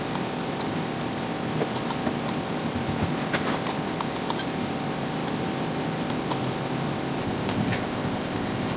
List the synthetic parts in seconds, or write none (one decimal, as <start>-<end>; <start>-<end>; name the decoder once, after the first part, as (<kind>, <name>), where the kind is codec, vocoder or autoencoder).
7.2-8.8 (codec, ZipCodec)